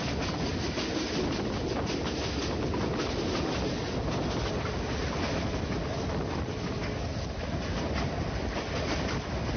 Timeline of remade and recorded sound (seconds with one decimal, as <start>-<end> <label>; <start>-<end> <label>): 0.0-9.6 recorded